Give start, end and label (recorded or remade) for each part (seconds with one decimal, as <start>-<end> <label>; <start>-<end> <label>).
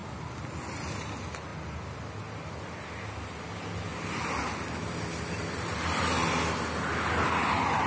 0.0-7.9 recorded